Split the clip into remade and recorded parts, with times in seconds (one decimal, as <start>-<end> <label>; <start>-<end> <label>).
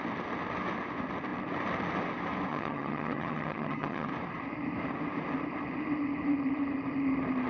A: 0.0-2.5 recorded; 2.5-4.1 remade; 4.1-7.5 recorded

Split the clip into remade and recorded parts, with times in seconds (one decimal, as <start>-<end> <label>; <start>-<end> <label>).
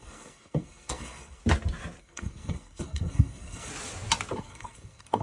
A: 0.0-1.4 remade; 1.4-2.0 recorded; 2.0-3.7 remade; 3.7-4.4 recorded; 4.4-5.2 remade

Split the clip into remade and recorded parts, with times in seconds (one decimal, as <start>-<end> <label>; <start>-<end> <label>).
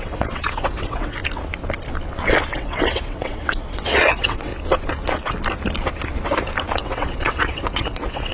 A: 0.0-1.2 remade; 1.2-2.5 recorded; 2.5-4.5 remade; 4.5-6.8 recorded; 6.8-8.3 remade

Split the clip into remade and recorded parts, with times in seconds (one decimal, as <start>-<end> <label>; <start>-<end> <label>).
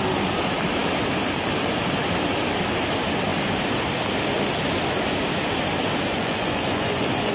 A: 0.0-6.1 recorded; 6.1-7.3 remade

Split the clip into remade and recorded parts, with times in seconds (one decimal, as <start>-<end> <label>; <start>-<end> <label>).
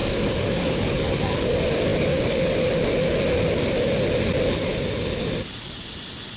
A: 0.0-1.1 remade; 1.1-6.4 recorded